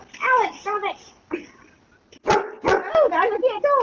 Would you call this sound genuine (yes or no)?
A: yes